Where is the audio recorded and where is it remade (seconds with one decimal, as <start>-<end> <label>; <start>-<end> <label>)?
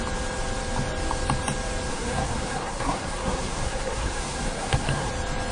0.0-1.9 recorded; 1.9-5.1 remade; 5.1-5.5 recorded